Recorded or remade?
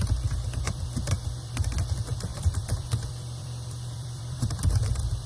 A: remade